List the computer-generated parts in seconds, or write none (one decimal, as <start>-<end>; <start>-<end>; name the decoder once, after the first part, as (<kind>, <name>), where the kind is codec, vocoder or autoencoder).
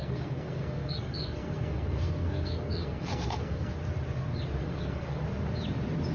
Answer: 0.0-3.7 (codec, SNAC); 4.6-5.2